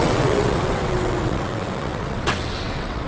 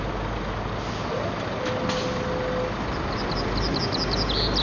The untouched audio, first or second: second